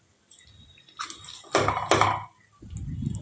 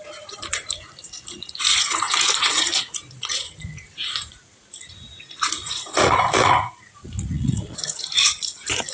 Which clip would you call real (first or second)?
first